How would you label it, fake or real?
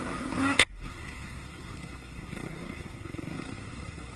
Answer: fake